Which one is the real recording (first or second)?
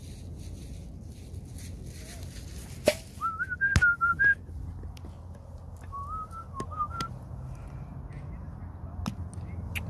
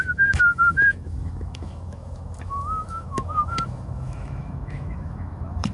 first